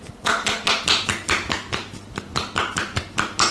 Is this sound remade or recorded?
recorded